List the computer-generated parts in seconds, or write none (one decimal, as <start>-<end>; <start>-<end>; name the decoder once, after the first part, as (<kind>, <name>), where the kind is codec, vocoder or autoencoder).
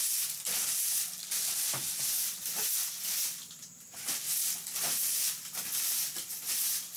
none